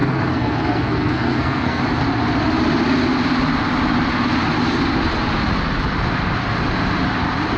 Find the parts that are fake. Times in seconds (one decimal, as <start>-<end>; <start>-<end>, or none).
0.0-1.8